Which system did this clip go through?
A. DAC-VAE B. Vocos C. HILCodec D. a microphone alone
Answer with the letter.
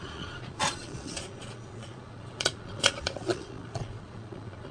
B